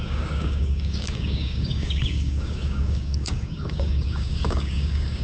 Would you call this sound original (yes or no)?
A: no